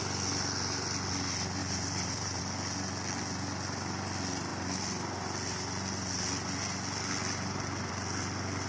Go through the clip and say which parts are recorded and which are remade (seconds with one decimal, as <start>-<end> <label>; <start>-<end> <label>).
0.0-1.6 recorded; 1.6-2.4 remade; 2.4-8.7 recorded